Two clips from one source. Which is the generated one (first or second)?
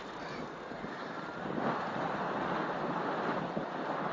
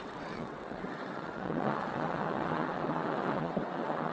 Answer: second